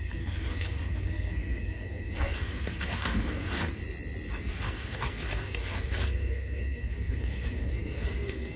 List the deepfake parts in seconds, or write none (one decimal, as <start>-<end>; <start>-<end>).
0.0-3.8; 4.4-8.6